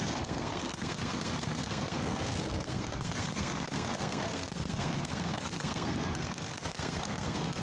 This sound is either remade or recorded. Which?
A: remade